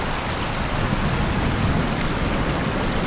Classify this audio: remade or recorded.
recorded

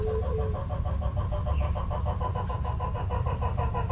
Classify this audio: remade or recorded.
recorded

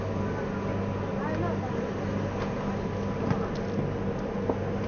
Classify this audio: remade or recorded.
recorded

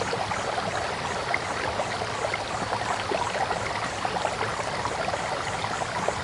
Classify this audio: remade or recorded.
recorded